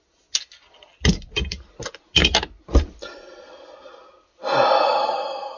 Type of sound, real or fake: real